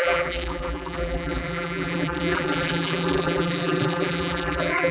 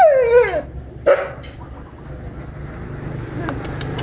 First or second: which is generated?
first